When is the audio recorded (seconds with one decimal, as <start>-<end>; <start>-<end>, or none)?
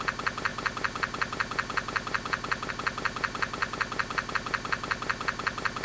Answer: 0.0-5.8